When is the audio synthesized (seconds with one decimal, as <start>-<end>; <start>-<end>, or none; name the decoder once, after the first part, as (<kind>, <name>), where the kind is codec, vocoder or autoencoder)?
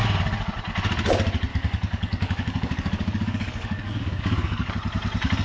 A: 1.5-4.7 (codec, DAC)